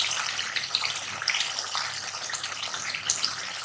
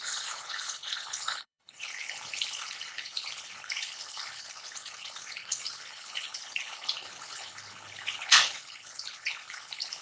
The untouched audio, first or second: first